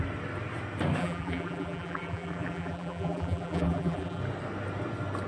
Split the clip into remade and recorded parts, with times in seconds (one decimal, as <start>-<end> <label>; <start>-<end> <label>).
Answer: 0.0-1.0 recorded; 1.0-4.2 remade; 4.2-5.3 recorded